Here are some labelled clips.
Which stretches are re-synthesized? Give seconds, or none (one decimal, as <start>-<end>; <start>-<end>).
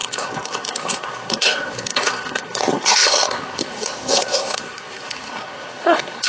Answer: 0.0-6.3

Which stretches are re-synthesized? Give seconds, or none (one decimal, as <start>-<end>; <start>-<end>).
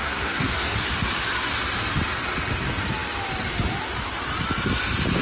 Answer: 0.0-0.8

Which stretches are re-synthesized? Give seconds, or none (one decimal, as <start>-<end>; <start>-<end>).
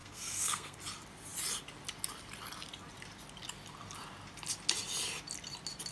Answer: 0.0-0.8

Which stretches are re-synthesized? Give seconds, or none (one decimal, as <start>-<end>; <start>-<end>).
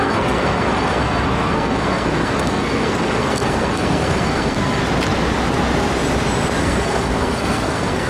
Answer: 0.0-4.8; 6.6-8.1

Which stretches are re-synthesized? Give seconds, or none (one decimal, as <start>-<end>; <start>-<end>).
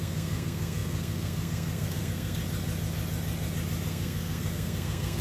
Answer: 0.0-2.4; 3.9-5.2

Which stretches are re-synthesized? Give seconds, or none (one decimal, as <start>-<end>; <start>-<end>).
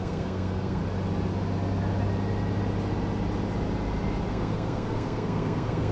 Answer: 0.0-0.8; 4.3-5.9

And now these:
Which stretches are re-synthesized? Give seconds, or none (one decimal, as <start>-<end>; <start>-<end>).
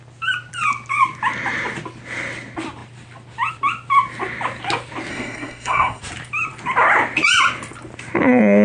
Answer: 5.1-6.0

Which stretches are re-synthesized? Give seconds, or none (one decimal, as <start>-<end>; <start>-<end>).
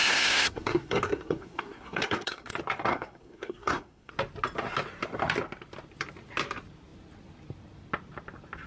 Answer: 0.0-2.5; 2.9-4.1